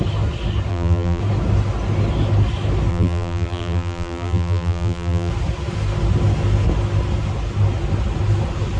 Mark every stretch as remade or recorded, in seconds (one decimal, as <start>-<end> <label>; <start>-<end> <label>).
0.0-0.7 recorded; 0.7-1.2 remade; 1.2-2.9 recorded; 2.9-5.3 remade; 5.3-8.8 recorded